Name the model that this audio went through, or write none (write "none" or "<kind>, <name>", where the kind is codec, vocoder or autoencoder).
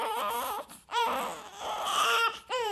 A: vocoder, BigVGAN v2